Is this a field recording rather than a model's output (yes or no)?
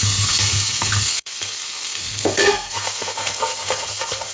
no